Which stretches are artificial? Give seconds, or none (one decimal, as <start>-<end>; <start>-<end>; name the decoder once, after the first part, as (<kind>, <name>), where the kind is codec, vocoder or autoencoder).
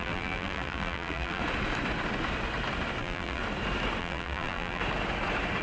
0.0-1.4 (vocoder, BigVGAN v2); 3.0-3.4; 4.0-4.8